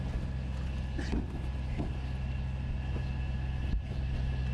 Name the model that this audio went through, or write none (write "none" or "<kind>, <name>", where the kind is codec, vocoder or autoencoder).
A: none